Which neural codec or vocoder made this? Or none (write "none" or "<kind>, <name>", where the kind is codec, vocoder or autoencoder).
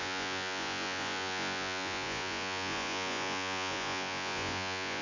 vocoder, Vocos